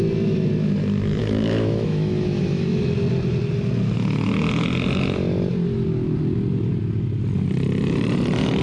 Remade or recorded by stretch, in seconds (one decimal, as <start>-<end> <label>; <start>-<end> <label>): 0.0-1.2 recorded; 1.2-2.8 remade; 2.8-8.6 recorded

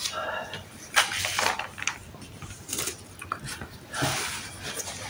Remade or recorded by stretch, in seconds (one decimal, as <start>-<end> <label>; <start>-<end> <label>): 0.0-5.1 recorded

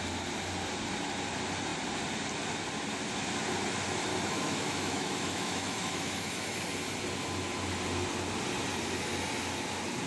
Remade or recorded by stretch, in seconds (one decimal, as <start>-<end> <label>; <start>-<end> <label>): 0.0-4.1 recorded; 4.1-6.6 remade; 6.6-10.1 recorded

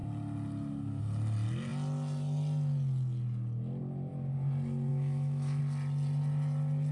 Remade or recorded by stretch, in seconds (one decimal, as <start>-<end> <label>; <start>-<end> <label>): 0.0-4.9 recorded; 4.9-5.6 remade; 5.6-6.9 recorded

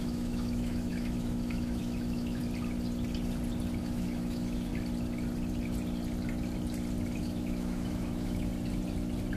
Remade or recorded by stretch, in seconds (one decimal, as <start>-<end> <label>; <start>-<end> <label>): 0.0-2.4 remade; 2.4-3.8 recorded; 3.8-4.7 remade; 4.7-7.2 recorded; 7.2-8.5 remade; 8.5-9.4 recorded